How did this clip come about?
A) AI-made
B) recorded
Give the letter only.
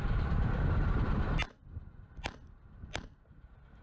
B